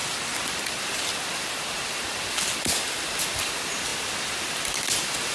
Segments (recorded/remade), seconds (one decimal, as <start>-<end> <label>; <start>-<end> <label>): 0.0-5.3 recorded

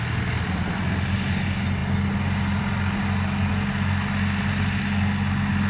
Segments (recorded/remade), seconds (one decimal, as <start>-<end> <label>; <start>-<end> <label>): 0.0-5.7 recorded

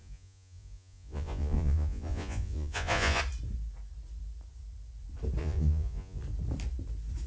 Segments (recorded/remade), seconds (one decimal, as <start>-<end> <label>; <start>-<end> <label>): 0.0-3.2 remade; 3.2-5.4 recorded; 5.4-6.2 remade; 6.2-7.3 recorded

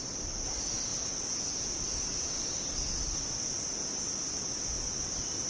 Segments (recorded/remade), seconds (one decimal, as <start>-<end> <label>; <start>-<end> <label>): 0.0-5.5 recorded

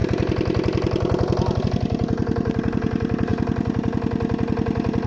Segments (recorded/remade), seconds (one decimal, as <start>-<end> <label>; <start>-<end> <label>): 0.0-5.1 recorded

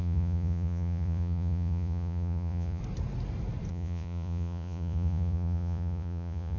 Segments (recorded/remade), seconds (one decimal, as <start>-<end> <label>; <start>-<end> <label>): 0.0-2.8 remade; 2.8-3.7 recorded; 3.7-6.6 remade